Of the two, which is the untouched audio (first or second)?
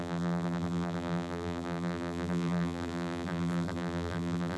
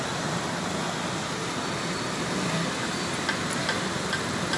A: second